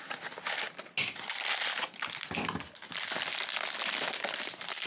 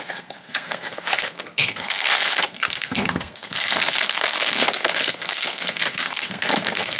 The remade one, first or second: second